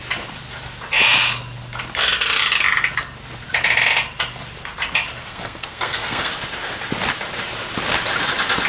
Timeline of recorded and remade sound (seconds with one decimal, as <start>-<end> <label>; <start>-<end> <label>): 0.0-5.2 recorded; 5.2-6.3 remade; 6.3-8.7 recorded